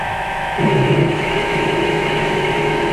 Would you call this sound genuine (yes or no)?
no